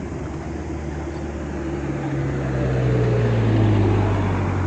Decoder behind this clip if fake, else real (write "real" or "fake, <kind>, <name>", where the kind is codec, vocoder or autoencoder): real